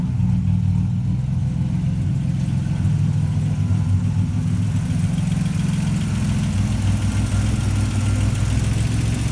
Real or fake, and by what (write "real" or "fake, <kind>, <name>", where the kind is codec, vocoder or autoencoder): real